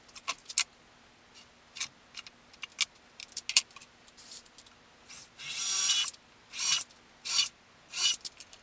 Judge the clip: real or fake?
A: real